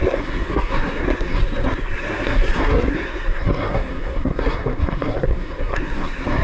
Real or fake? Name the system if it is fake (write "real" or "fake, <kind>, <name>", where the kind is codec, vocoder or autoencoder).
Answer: fake, codec, SNAC